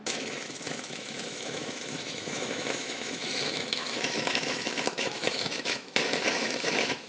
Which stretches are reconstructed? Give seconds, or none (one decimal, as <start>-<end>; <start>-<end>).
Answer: 0.0-7.1